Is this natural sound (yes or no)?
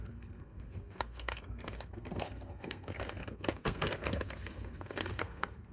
no